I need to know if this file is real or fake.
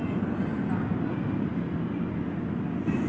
real